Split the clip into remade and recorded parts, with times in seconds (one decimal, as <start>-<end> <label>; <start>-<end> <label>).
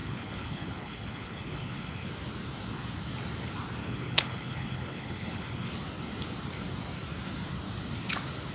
0.0-2.1 remade; 2.1-3.8 recorded; 3.8-5.7 remade; 5.7-8.5 recorded